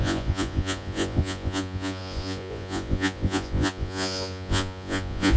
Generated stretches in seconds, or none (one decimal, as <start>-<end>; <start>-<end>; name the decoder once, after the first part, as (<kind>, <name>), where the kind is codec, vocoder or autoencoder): 0.0-5.4 (vocoder, Vocos)